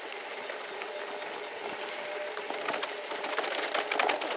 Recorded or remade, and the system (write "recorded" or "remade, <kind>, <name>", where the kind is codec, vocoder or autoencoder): recorded